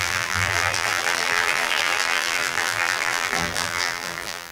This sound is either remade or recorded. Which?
remade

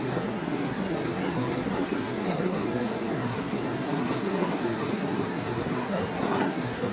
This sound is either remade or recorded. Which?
remade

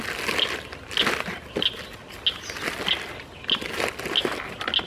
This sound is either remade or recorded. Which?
recorded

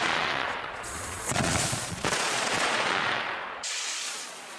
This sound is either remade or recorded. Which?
remade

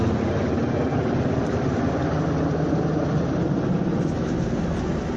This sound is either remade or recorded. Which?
recorded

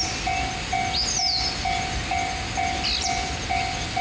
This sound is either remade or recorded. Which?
recorded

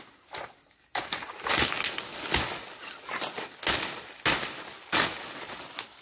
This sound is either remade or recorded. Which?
recorded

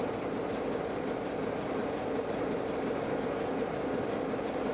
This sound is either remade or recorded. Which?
recorded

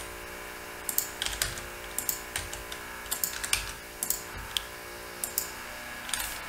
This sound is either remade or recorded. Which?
recorded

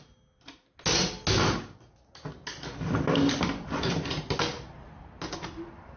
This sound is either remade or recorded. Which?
recorded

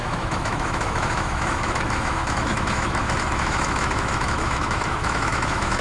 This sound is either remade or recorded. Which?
remade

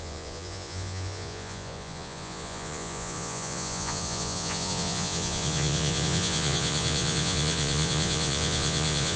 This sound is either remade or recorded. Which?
remade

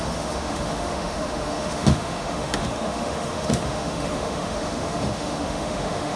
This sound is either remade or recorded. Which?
remade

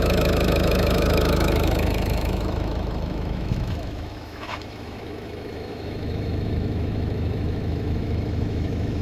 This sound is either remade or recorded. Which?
remade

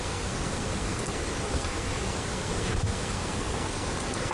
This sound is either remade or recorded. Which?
remade